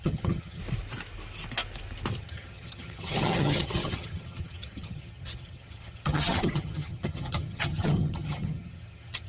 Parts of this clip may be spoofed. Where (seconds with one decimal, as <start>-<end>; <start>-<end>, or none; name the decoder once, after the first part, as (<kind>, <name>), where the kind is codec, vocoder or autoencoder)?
0.0-0.6 (vocoder, HiFi-GAN); 2.2-9.3